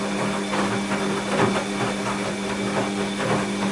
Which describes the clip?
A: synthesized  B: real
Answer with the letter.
B